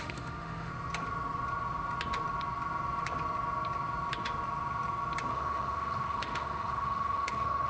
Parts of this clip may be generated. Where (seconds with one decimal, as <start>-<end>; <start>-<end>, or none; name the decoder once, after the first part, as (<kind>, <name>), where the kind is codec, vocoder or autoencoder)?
0.0-0.7 (autoencoder, DAC-VAE); 5.3-7.7